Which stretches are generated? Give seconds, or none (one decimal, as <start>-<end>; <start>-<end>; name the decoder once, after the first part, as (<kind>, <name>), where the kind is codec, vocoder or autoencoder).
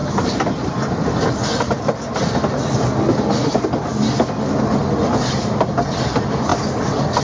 none